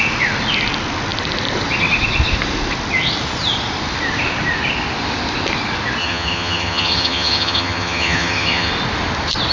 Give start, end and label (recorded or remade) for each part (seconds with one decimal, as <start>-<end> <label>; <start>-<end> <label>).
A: 0.0-6.0 recorded; 6.0-8.7 remade; 8.7-9.5 recorded